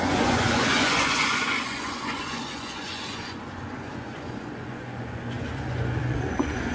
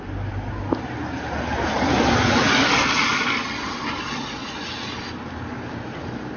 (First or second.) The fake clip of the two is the first